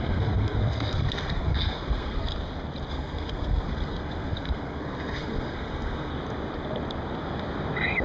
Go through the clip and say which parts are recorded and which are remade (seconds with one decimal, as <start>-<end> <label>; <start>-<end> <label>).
0.0-2.3 remade; 2.3-2.9 recorded; 2.9-6.1 remade; 6.1-8.0 recorded